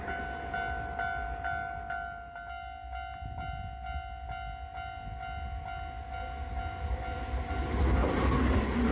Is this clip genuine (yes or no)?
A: yes